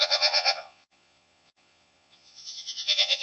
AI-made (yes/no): yes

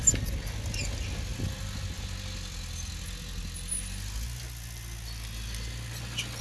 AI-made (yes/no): no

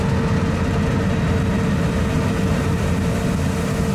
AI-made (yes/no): no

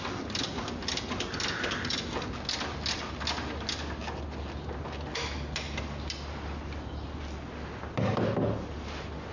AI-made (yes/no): no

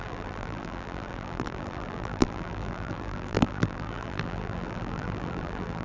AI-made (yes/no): yes